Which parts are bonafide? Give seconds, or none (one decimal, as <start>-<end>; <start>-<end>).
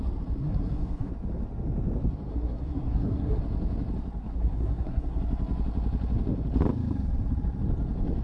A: 0.0-0.4; 1.1-2.3; 3.4-4.2; 5.2-8.2